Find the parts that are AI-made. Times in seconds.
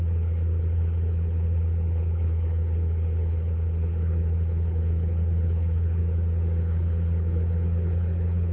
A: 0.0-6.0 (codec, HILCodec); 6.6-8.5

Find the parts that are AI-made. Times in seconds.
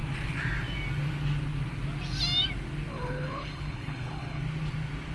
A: 2.9-4.4 (codec, HILCodec)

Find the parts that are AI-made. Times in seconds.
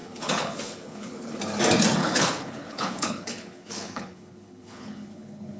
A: 0.0-1.4 (codec, HILCodec); 2.0-5.6